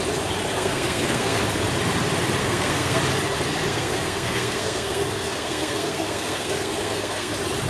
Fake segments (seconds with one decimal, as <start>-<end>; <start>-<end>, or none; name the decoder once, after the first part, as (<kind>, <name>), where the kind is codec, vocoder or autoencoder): 0.5-1.4 (codec, SNAC); 2.4-3.0; 3.7-7.3